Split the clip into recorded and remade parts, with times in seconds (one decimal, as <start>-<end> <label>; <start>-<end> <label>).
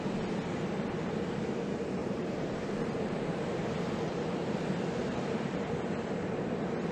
0.0-2.0 recorded; 2.0-3.9 remade; 3.9-5.0 recorded; 5.0-5.7 remade; 5.7-6.9 recorded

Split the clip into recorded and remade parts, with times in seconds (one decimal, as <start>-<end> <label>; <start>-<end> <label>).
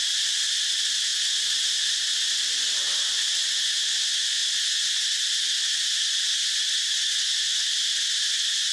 0.0-8.7 recorded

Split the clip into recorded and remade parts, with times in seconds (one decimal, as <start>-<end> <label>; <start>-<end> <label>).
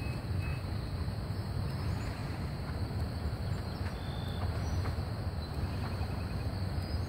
0.0-7.1 recorded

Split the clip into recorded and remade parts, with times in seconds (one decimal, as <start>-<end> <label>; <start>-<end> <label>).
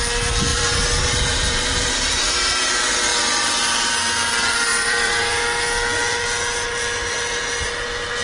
0.0-0.5 recorded; 0.5-2.5 remade; 2.5-4.7 recorded; 4.7-5.3 remade; 5.3-8.2 recorded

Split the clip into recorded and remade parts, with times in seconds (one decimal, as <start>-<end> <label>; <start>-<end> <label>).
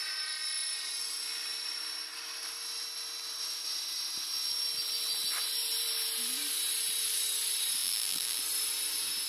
0.0-7.8 recorded; 7.8-8.4 remade; 8.4-9.3 recorded